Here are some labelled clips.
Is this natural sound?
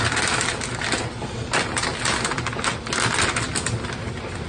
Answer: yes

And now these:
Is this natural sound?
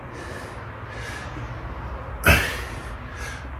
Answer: yes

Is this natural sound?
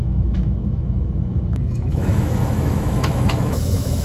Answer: no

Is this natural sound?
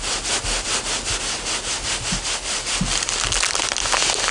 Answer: yes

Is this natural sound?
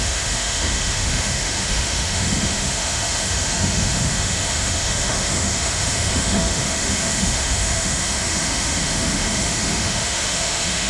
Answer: no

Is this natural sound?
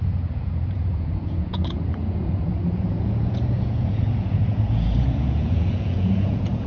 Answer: no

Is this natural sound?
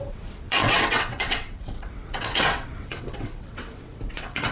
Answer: no